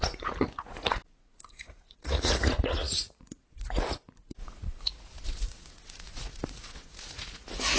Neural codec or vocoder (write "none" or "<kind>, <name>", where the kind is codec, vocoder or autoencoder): vocoder, Vocos